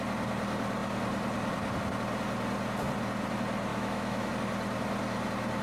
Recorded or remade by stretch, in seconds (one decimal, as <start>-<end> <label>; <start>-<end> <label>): 0.0-3.7 recorded; 3.7-4.3 remade; 4.3-5.6 recorded